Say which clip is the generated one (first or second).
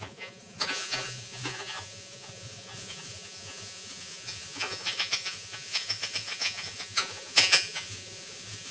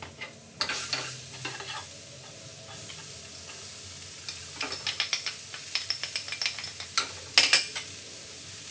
first